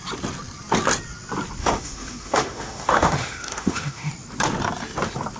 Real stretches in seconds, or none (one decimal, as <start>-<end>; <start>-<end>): 0.0-1.6; 4.1-5.4